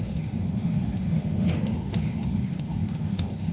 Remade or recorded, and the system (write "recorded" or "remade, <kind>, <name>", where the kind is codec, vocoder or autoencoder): remade, autoencoder, DAC-VAE